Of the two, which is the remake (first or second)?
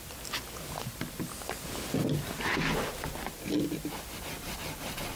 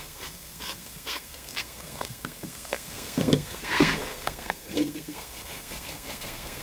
second